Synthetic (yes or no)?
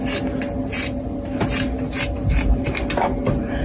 no